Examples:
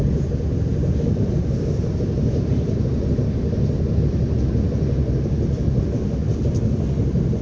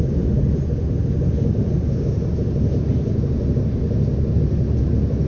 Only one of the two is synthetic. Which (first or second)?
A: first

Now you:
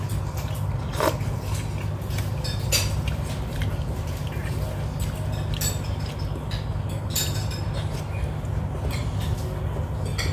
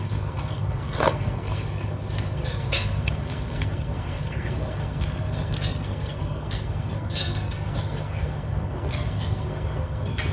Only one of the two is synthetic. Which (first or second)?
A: second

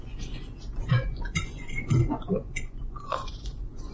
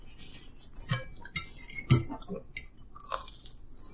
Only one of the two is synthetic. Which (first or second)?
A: first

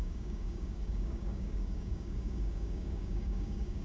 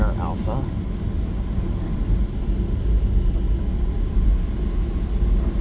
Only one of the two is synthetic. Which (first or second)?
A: first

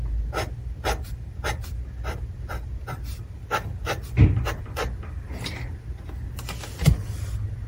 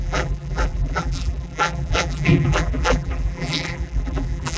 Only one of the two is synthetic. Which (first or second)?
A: second